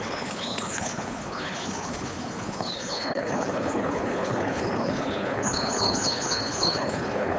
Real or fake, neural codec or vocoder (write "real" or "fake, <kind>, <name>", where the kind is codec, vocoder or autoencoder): fake, codec, HILCodec